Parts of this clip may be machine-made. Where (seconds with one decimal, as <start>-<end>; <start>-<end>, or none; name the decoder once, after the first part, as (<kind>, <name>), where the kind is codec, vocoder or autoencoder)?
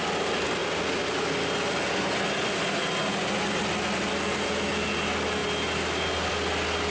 none